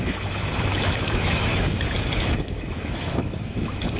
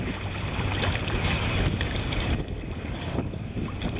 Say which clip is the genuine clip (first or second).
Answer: second